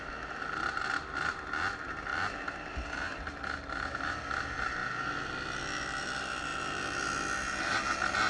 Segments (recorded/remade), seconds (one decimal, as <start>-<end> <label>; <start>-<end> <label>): 0.0-8.3 recorded